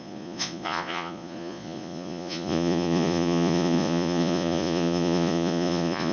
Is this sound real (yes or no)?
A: no